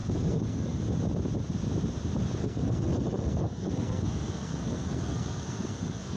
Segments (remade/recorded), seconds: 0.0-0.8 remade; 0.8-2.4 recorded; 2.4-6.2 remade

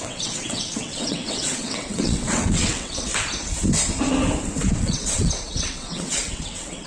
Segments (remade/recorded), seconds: 0.0-3.1 remade; 3.1-4.8 recorded; 4.8-6.9 remade

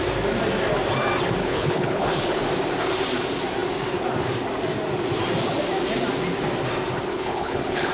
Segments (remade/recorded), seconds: 0.0-1.4 recorded; 1.4-2.4 remade; 2.4-7.1 recorded; 7.1-7.9 remade

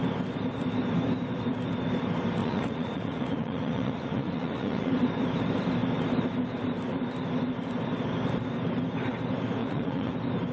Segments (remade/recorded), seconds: 0.0-2.4 recorded; 2.4-4.9 remade; 4.9-9.6 recorded; 9.6-10.1 remade; 10.1-10.5 recorded

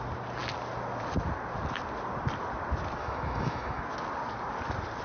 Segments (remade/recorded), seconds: 0.0-3.0 recorded; 3.0-3.8 remade; 3.8-5.0 recorded

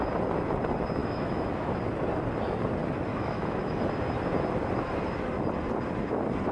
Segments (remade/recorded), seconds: 0.0-1.0 recorded; 1.0-1.8 remade; 1.8-3.1 recorded; 3.1-3.9 remade; 3.9-6.5 recorded

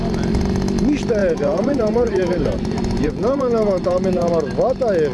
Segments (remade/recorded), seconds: 0.0-1.2 recorded; 1.2-4.3 remade; 4.3-5.1 recorded